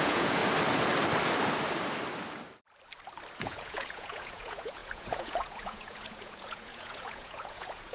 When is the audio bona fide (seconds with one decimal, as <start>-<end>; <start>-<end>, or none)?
0.4-3.4